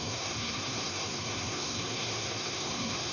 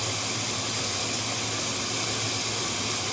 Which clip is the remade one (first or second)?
first